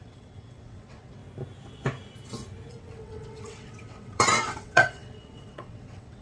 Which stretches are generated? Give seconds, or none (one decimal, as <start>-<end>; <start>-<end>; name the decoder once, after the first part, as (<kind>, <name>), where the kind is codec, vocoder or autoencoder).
0.0-1.2 (vocoder, WaveNeXt); 2.7-6.2